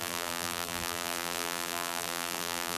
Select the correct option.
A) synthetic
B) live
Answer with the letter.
A